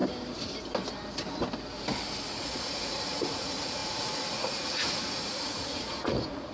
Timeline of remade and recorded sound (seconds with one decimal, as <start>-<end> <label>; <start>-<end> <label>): 0.0-2.4 recorded; 2.4-6.5 remade